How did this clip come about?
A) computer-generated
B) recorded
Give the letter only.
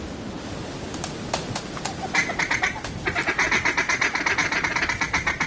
B